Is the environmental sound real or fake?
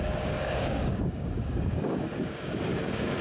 fake